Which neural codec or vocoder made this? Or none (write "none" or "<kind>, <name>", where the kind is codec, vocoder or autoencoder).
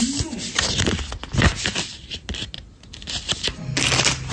none